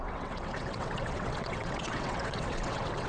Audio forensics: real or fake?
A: fake